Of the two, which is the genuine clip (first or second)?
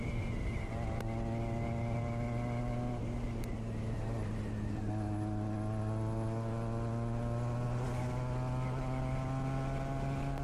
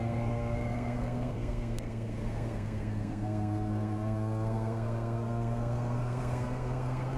first